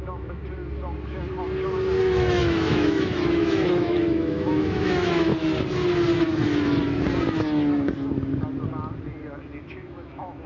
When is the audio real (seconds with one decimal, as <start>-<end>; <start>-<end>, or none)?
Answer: 0.4-2.0; 5.3-9.6